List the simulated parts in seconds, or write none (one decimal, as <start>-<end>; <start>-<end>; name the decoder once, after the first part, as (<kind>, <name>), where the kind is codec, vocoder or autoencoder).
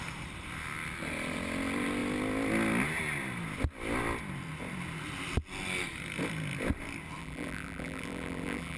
7.2-8.8 (vocoder, BigVGAN v2)